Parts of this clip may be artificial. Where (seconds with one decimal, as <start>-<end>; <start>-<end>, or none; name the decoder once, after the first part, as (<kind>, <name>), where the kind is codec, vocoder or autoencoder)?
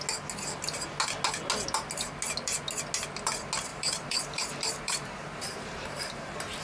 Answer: 3.7-6.6 (vocoder, BigVGAN v2)